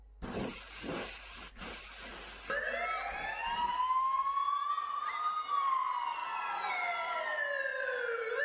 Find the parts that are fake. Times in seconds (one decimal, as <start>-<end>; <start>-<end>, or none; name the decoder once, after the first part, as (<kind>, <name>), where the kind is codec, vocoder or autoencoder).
4.8-6.2 (vocoder, BigVGAN v2); 6.7-8.4